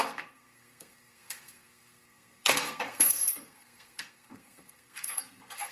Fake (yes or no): yes